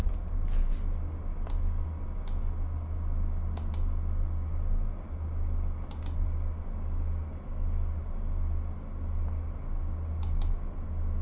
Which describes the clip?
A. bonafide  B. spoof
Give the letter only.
A